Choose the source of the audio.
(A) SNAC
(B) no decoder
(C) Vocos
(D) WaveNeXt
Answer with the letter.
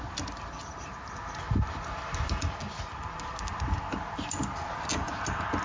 B